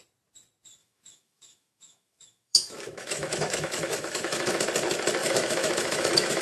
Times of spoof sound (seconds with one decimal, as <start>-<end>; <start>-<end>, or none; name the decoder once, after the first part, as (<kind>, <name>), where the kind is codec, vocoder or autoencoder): 0.8-4.6 (autoencoder, DAC-VAE); 5.2-6.4

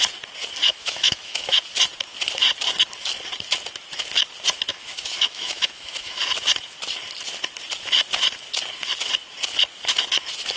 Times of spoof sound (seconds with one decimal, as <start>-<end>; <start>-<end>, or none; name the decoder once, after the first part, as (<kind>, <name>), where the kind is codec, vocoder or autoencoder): 0.7-1.6 (autoencoder, DAC-VAE); 4.7-6.2